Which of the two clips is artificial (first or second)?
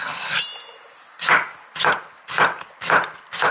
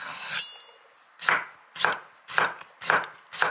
first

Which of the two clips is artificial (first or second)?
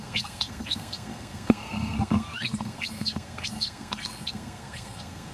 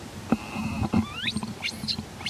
first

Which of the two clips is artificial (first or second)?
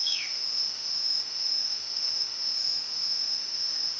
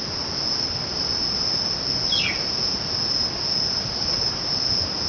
first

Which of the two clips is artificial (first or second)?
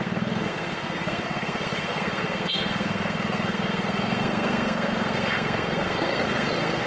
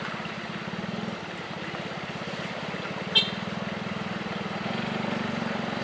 first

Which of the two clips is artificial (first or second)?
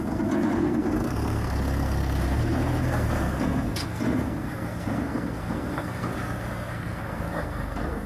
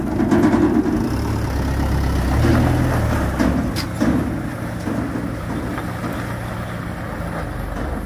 first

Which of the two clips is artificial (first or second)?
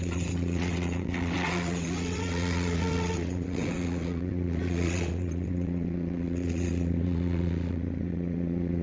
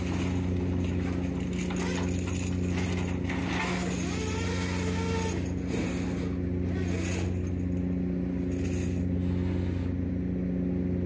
first